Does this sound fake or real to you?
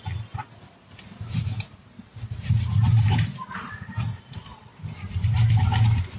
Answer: real